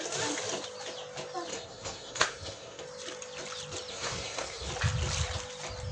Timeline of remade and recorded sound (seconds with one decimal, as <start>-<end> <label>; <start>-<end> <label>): 0.0-1.5 recorded; 1.5-2.8 remade; 2.8-3.9 recorded; 3.9-4.7 remade; 4.7-5.9 recorded

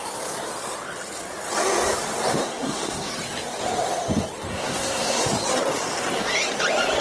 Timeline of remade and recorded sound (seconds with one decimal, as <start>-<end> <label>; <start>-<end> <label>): 0.0-2.4 recorded; 2.4-3.1 remade; 3.1-4.5 recorded; 4.5-5.2 remade; 5.2-7.0 recorded

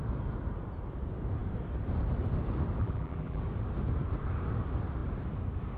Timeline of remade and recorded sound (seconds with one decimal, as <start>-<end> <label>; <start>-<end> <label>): 0.0-2.8 recorded; 2.8-3.4 remade; 3.4-5.8 recorded